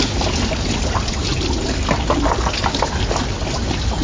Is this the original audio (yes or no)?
yes